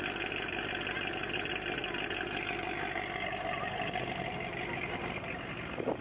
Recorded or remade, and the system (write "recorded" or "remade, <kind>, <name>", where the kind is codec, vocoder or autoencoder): recorded